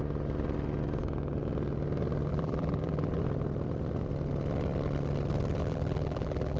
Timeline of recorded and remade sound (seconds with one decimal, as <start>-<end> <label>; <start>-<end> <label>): 0.0-2.3 recorded; 2.3-3.2 remade; 3.2-5.6 recorded; 5.6-6.6 remade